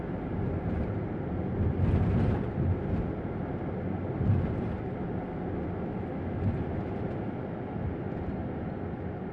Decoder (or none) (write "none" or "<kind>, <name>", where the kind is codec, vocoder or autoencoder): none